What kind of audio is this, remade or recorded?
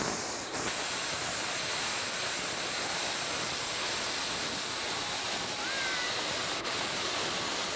recorded